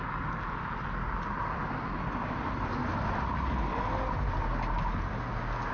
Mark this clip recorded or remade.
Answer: recorded